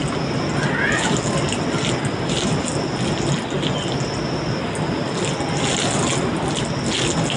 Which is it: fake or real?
real